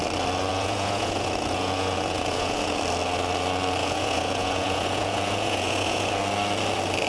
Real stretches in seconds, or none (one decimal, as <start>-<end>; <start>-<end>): 0.0-0.5; 2.8-3.8; 6.1-7.1